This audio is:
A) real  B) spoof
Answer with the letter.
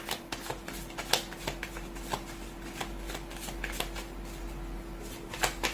A